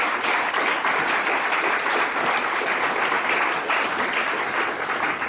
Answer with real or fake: real